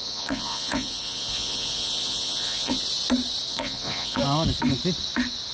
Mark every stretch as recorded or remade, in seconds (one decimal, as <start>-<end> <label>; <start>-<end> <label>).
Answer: 0.0-2.8 remade; 2.8-3.5 recorded; 3.5-4.2 remade; 4.2-5.5 recorded